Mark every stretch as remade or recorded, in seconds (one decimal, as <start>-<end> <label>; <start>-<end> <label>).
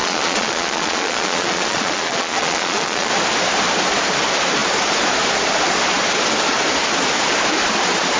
0.0-3.1 remade; 3.1-8.2 recorded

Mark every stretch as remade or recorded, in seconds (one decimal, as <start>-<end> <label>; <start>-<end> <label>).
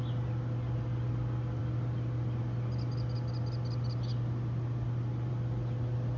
0.0-6.2 recorded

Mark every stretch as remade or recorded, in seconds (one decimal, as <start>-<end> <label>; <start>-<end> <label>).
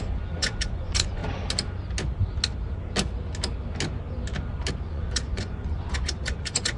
0.0-1.2 remade; 1.2-4.7 recorded; 4.7-6.8 remade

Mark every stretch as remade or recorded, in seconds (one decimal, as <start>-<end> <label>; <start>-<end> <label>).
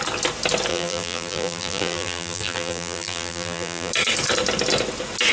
0.0-0.7 recorded; 0.7-3.9 remade; 3.9-5.3 recorded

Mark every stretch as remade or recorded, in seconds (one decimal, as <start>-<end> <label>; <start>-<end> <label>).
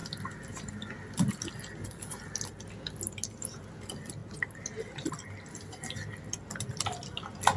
0.0-4.2 recorded; 4.2-5.1 remade; 5.1-7.6 recorded